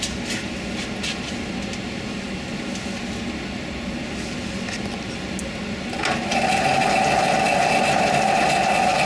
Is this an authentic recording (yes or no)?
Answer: yes